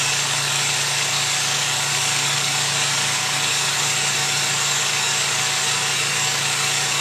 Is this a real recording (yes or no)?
no